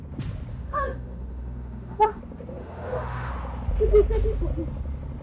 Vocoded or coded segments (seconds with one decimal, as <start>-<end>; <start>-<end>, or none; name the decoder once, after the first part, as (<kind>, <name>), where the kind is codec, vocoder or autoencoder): 0.5-2.2 (autoencoder, DAC-VAE); 2.6-3.3